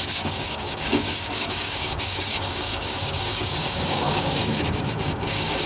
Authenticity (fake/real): fake